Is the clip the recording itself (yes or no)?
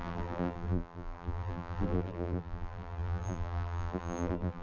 no